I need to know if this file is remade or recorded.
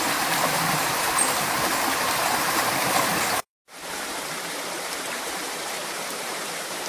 remade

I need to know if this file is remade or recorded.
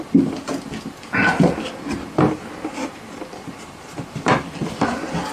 recorded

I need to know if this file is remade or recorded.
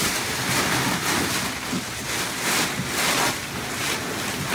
recorded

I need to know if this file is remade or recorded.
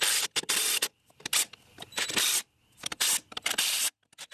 recorded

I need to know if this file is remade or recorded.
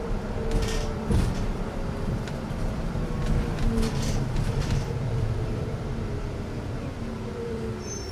remade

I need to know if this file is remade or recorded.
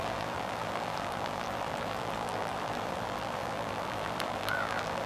remade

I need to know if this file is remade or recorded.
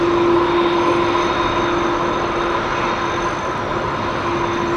recorded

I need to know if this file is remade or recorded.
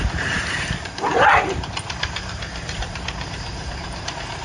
remade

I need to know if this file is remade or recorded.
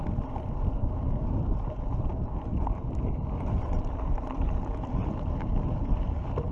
remade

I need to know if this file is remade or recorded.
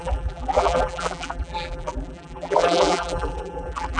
remade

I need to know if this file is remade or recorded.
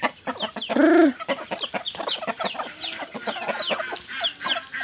recorded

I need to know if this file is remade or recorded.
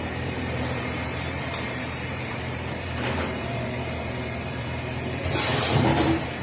remade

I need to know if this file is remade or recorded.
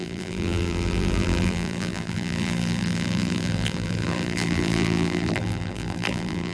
remade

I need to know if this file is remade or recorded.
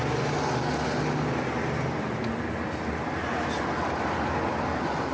recorded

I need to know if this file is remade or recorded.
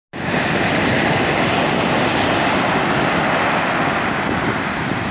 recorded